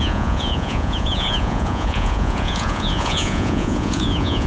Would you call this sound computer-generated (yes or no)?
yes